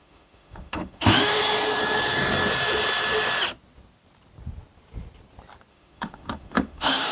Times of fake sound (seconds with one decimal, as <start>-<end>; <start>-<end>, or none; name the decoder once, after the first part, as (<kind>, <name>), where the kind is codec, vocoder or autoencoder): 0.0-1.4 (autoencoder, DAC-VAE); 5.7-7.1